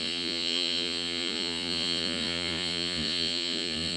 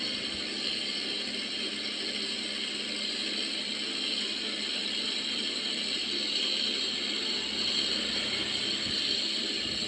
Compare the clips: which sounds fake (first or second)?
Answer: first